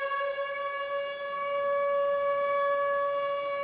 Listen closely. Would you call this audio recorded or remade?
recorded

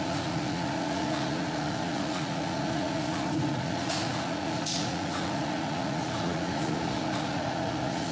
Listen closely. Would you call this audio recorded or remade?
remade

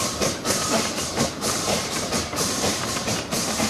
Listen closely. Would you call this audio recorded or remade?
remade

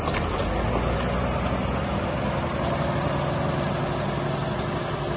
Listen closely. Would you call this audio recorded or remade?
recorded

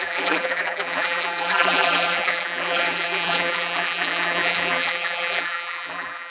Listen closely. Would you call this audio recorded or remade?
remade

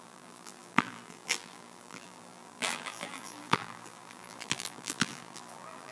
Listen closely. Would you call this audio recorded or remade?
remade